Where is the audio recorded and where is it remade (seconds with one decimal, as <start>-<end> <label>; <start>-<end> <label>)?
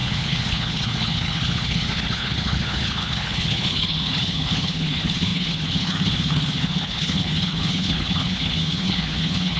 0.0-9.6 remade